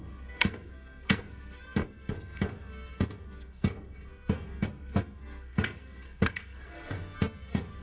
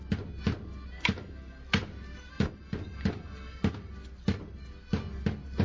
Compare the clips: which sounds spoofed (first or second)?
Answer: first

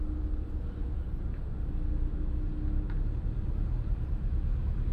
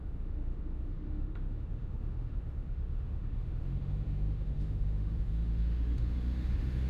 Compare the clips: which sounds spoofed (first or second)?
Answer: second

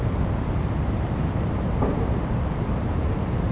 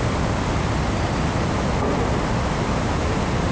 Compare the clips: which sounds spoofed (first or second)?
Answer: first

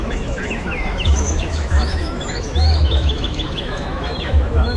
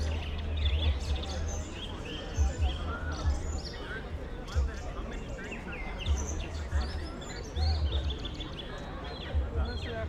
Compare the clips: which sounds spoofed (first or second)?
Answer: first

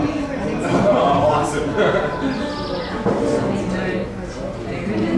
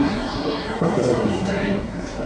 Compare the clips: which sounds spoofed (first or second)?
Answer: second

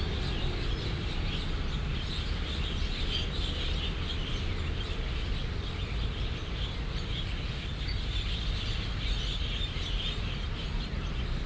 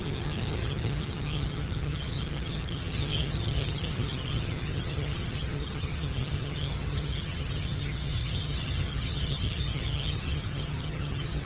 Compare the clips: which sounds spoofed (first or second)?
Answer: second